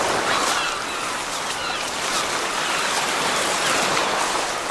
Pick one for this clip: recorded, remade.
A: recorded